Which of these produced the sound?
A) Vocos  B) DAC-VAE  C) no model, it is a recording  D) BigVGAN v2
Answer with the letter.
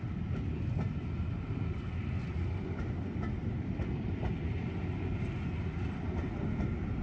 C